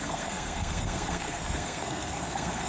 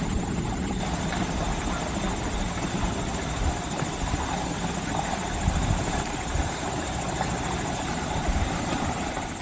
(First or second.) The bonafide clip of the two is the second